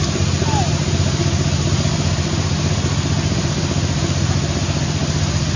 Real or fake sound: real